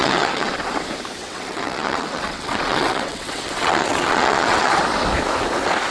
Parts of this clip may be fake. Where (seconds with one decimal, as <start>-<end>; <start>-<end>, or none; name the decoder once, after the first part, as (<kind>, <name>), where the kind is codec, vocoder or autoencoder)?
0.0-0.5 (vocoder, WaveNeXt); 1.2-4.7